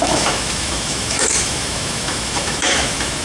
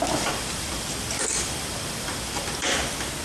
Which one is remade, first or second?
first